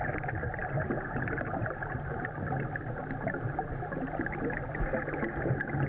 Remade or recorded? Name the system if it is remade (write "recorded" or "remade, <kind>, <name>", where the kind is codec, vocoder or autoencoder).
recorded